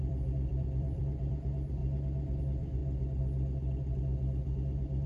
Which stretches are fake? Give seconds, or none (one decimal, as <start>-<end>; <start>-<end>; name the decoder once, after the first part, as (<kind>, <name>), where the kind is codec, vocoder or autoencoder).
0.0-1.8 (vocoder, BigVGAN v2); 2.4-2.8